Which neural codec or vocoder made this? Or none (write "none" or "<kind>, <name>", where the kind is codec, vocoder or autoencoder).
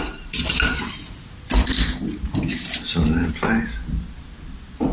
none